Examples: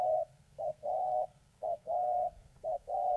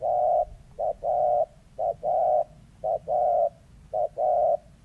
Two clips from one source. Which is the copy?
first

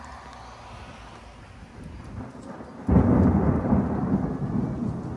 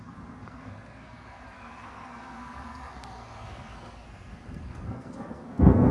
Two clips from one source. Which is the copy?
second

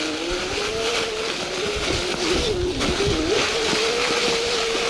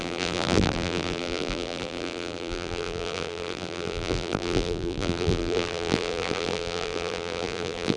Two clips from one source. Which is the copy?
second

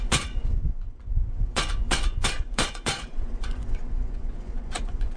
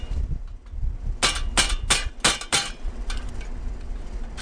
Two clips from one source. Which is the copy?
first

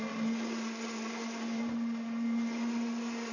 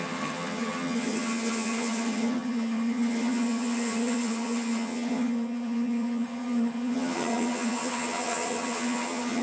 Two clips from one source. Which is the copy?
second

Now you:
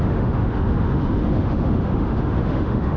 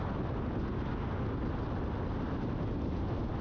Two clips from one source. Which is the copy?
first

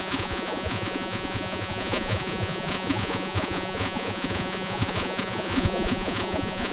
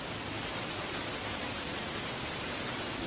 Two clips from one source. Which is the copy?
first